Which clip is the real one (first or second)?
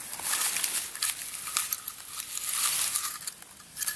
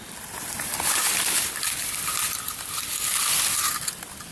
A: first